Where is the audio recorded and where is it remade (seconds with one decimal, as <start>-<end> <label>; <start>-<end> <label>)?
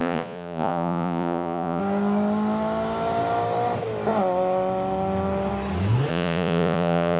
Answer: 0.0-1.8 remade; 1.8-6.1 recorded; 6.1-7.2 remade